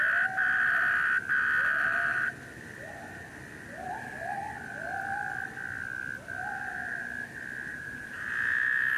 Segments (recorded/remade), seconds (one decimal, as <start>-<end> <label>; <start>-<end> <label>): 0.0-7.7 recorded; 7.7-8.3 remade; 8.3-9.0 recorded

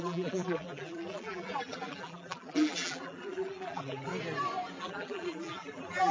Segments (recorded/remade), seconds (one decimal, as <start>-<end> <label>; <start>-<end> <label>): 0.0-4.1 remade; 4.1-4.8 recorded; 4.8-6.1 remade